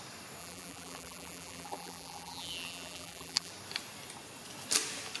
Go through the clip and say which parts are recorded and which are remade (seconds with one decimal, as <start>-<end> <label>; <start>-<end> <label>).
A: 0.0-0.4 recorded; 0.4-3.5 remade; 3.5-5.2 recorded